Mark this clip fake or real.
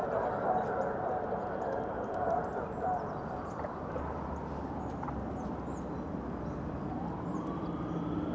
real